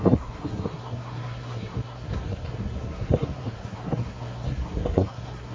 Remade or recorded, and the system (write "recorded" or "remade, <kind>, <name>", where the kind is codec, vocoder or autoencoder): remade, codec, SNAC